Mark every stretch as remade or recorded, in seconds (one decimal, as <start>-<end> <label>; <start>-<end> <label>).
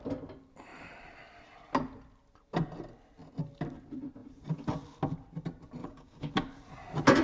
0.0-5.8 recorded; 5.8-6.3 remade; 6.3-7.2 recorded